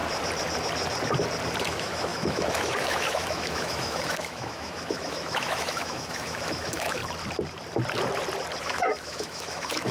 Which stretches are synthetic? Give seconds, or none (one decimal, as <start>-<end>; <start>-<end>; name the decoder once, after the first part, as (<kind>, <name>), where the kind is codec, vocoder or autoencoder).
1.6-7.0 (autoencoder, DAC-VAE); 8.6-9.9